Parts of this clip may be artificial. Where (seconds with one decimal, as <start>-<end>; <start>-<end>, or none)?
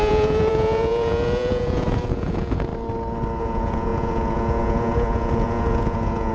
0.0-2.7; 3.4-6.3